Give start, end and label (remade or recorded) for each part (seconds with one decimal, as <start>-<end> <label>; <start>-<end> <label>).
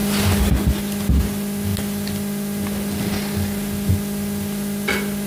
0.0-0.5 remade; 0.5-5.3 recorded